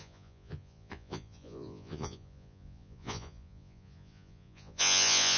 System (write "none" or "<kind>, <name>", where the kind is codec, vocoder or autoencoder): vocoder, Vocos